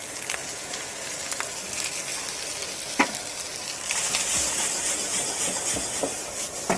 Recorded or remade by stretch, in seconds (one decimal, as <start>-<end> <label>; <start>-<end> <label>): 0.0-0.4 recorded; 0.4-1.2 remade; 1.2-6.8 recorded